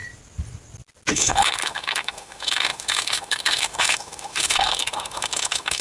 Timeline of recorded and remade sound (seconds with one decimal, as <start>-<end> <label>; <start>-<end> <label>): 0.0-1.1 recorded; 1.1-5.8 remade